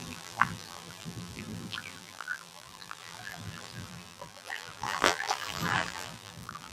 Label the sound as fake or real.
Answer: fake